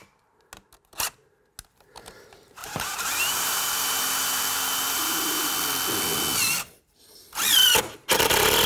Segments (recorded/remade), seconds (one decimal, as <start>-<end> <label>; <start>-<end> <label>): 0.0-2.6 recorded; 2.6-5.5 remade; 5.5-8.7 recorded